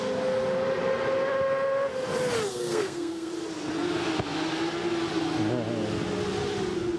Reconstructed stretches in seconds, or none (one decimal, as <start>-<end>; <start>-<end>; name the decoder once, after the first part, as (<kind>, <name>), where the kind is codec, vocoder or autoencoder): 2.5-3.3 (codec, SNAC)